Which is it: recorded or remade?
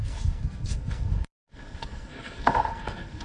remade